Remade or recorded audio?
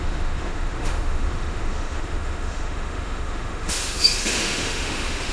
remade